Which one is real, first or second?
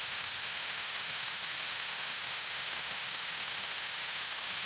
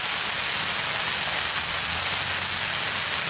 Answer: second